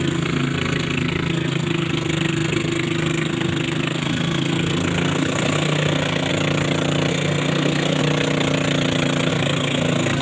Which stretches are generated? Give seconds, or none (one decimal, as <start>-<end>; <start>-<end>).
0.0-6.3; 7.1-8.0; 9.3-10.2